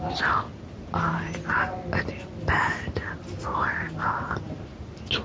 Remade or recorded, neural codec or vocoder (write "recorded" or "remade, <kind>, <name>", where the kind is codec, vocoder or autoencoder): recorded